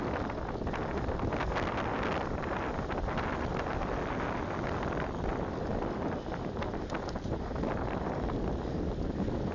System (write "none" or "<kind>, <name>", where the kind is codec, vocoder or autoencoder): none